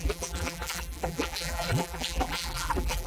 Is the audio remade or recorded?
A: remade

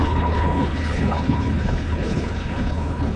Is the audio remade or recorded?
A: remade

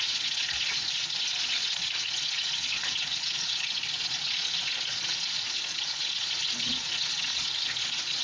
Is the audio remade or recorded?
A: remade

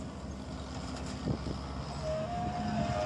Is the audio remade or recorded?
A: recorded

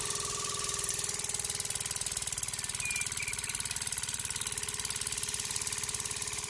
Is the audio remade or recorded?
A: recorded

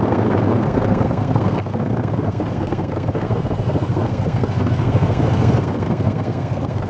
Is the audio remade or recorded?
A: remade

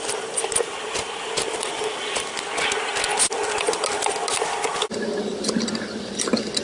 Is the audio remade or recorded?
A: recorded